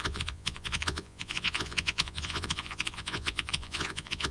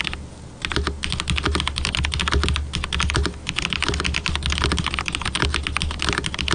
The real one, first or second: second